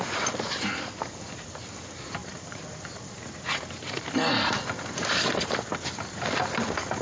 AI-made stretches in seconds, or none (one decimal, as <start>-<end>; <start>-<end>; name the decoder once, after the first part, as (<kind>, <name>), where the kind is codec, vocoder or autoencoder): none